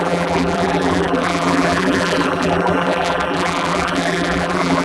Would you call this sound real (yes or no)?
no